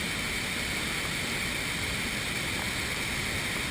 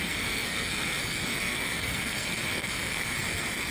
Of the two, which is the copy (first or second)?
second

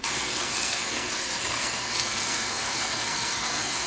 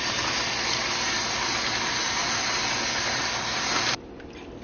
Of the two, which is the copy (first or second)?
first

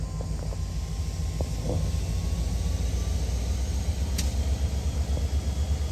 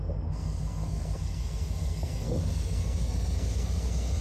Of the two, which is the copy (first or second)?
second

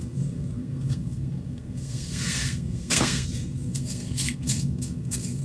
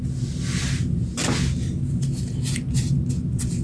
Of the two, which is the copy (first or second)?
first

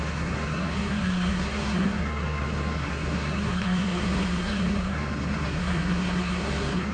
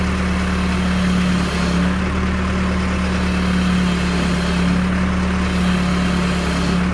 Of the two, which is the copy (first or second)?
first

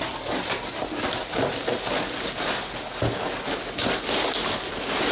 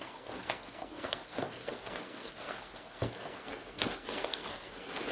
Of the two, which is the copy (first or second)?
second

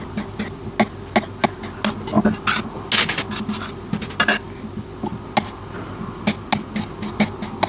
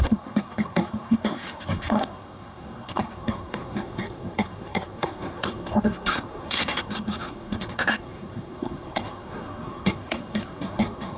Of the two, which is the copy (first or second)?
second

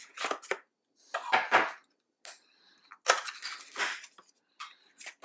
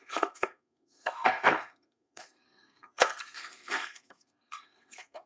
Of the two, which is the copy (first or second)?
second